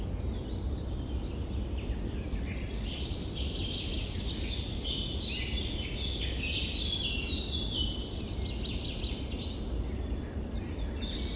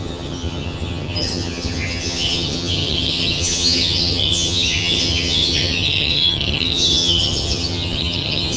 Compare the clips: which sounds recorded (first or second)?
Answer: first